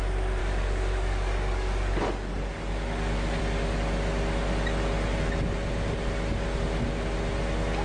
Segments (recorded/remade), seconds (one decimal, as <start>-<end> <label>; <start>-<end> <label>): 0.0-0.4 recorded; 0.4-3.4 remade; 3.4-7.8 recorded